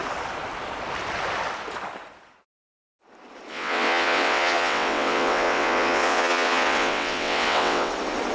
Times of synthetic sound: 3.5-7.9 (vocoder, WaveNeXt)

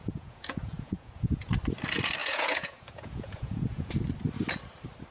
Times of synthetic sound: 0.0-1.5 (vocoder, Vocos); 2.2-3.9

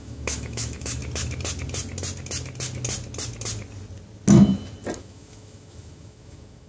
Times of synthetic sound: 0.0-1.0 (autoencoder, DAC-VAE); 5.0-6.7